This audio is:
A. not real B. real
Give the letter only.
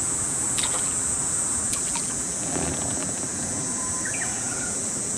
A